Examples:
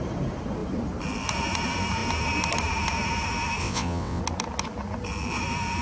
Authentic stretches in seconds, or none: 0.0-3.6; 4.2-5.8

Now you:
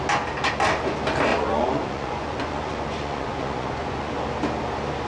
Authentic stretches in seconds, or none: 0.0-1.3; 4.1-5.1

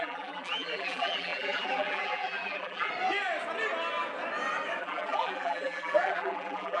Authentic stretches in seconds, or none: 2.9-4.8

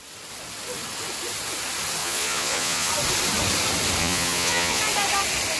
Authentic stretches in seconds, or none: 0.0-2.0; 2.9-4.0; 4.8-5.6

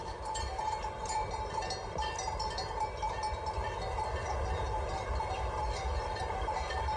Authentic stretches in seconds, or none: 0.0-4.2